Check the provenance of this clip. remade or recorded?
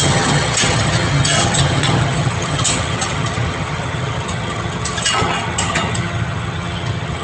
remade